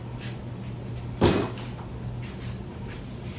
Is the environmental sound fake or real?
real